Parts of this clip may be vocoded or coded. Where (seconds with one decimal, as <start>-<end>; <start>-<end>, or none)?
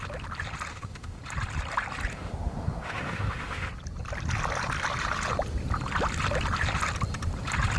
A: 0.7-1.2; 2.1-3.7